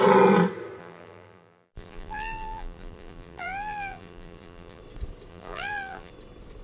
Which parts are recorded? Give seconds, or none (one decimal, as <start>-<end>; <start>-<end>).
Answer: 0.0-0.8; 4.8-5.3; 6.1-6.6